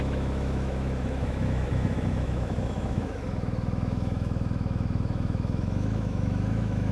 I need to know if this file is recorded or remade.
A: remade